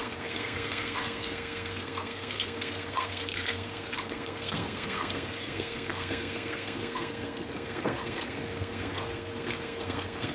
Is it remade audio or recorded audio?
remade